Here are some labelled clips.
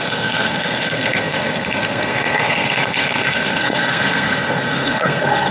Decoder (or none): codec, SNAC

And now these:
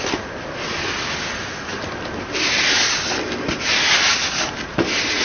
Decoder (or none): none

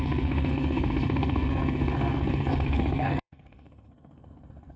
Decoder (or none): codec, SNAC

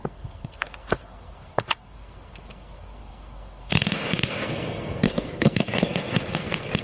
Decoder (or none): codec, SNAC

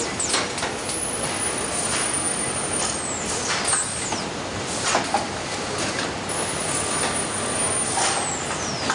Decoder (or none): none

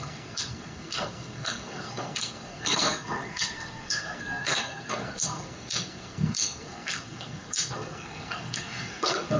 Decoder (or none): codec, SNAC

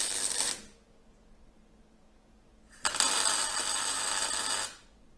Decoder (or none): none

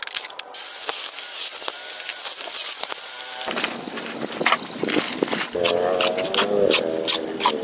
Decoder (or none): none